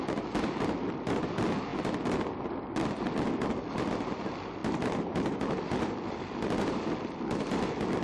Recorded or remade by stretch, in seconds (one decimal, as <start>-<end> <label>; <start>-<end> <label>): 0.0-8.0 recorded